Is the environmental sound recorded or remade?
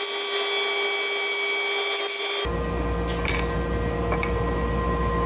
recorded